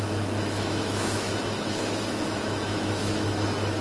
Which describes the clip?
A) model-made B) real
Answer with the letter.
A